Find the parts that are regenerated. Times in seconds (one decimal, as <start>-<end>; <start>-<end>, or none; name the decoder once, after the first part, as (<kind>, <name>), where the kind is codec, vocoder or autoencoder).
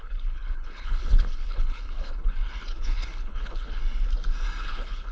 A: 0.0-3.8 (codec, HILCodec); 4.6-5.1